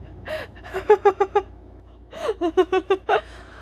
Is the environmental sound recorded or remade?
remade